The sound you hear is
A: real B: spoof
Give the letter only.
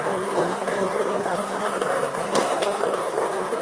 B